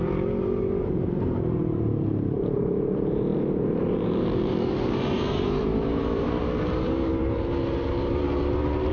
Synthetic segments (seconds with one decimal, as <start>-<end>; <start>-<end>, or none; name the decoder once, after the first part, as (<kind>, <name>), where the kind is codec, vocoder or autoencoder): 0.0-8.9 (vocoder, BigVGAN v2)